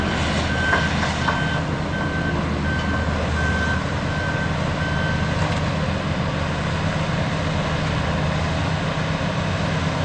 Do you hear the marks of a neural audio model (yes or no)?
no